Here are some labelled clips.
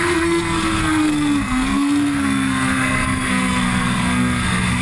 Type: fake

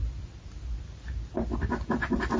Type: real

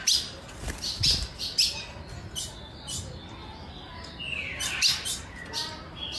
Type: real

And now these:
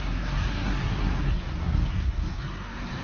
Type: fake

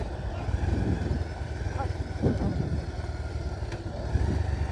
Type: real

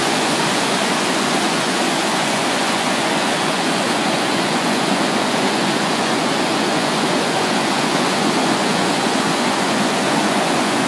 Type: fake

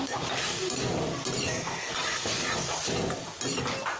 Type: real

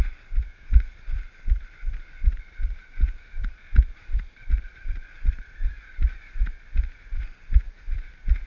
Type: real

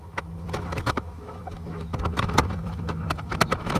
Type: fake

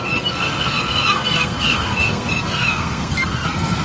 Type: fake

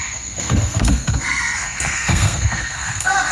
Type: fake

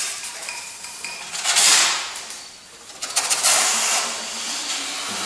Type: fake